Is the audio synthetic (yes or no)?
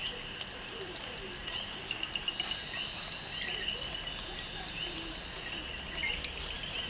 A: no